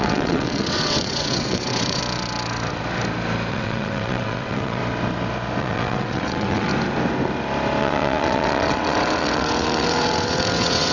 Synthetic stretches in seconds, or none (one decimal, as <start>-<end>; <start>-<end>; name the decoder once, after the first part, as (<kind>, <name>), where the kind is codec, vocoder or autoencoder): 0.0-2.0 (vocoder, WaveNeXt); 3.5-4.8; 5.6-6.7; 7.8-10.9